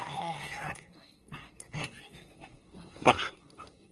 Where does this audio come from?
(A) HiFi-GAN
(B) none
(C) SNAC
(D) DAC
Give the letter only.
C